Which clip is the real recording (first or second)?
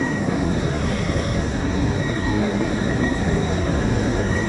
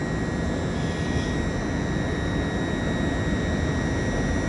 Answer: second